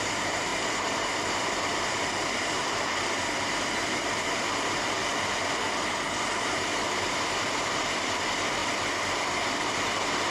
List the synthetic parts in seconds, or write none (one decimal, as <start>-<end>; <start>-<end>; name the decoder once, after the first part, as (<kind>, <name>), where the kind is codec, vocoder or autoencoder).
0.0-2.6 (vocoder, BigVGAN v2); 3.3-5.0; 6.4-8.6; 9.5-10.3